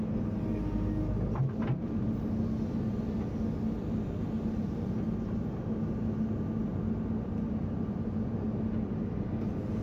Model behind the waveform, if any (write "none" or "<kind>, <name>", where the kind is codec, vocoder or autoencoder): none